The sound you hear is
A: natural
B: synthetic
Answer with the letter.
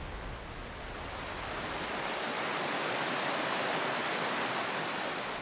A